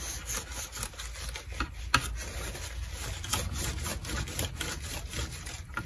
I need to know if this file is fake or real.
real